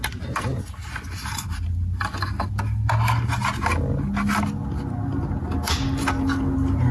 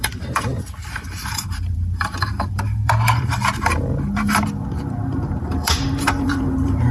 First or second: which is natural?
first